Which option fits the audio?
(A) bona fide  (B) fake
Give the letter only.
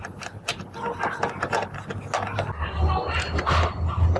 A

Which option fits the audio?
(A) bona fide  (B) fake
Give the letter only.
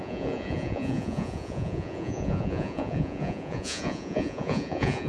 B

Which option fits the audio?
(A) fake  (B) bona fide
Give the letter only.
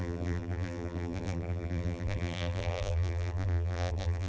A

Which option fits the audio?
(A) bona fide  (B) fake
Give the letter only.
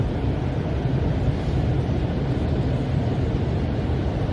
B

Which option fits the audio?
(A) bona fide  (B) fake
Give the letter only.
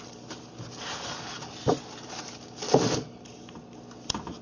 A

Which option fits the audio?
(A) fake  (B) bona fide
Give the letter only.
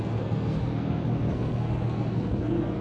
A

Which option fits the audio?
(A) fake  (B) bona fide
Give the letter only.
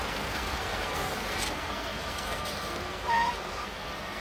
A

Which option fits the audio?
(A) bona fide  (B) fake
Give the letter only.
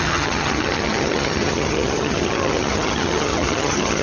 B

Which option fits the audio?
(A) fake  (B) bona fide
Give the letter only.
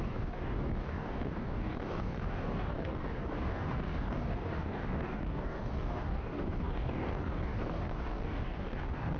A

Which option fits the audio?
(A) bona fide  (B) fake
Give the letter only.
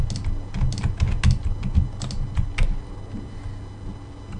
A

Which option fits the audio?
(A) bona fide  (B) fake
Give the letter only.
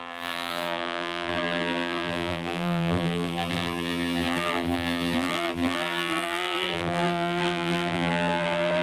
B